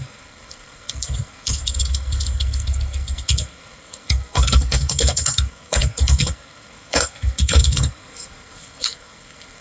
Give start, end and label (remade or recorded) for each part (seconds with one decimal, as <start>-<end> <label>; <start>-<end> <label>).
0.0-9.6 remade